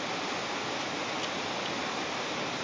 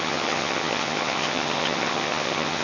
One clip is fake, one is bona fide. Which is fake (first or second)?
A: second